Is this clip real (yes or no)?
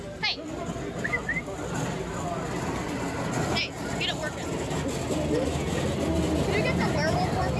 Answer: yes